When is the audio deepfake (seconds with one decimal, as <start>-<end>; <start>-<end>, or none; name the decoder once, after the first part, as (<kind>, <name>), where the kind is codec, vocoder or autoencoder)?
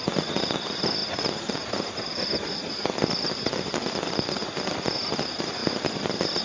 1.0-4.3 (vocoder, BigVGAN v2); 5.6-6.4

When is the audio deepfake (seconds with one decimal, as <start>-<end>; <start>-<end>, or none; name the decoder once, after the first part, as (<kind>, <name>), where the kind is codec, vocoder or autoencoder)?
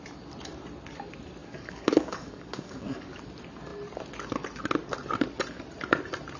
1.4-3.2 (codec, DAC)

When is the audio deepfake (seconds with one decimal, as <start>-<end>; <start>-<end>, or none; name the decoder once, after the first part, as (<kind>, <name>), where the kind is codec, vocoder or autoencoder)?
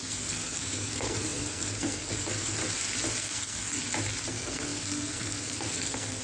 0.0-2.6 (codec, SNAC); 3.2-3.8; 4.3-6.2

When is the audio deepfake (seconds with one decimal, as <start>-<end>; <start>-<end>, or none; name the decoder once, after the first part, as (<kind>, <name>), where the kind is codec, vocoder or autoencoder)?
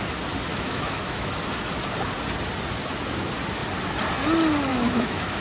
0.5-1.4 (autoencoder, DAC-VAE); 4.7-5.4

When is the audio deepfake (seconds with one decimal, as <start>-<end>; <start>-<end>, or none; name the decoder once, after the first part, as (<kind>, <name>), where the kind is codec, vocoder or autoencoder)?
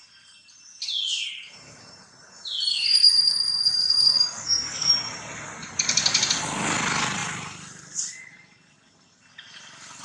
2.7-4.9 (codec, SNAC)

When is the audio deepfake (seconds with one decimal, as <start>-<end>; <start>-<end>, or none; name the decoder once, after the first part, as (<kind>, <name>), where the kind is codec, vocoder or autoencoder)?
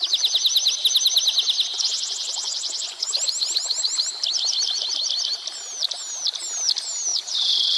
1.7-3.1 (vocoder, Vocos); 7.1-7.8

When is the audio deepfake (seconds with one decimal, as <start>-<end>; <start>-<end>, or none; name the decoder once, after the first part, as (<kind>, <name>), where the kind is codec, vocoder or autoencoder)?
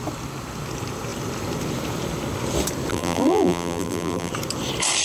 2.9-4.3 (vocoder, BigVGAN v2)